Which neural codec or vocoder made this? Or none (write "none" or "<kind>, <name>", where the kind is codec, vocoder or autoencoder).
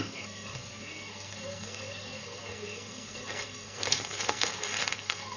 codec, SNAC